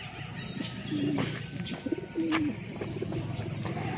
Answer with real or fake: real